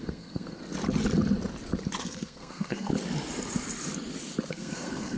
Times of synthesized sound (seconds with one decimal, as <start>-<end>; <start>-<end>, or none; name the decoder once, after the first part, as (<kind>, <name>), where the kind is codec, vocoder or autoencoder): 0.0-0.6 (codec, SNAC); 2.0-2.9; 4.5-5.2